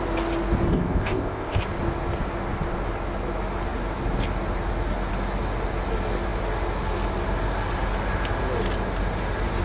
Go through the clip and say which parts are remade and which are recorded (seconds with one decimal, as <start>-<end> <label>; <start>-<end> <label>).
0.0-0.7 recorded; 0.7-1.6 remade; 1.6-9.6 recorded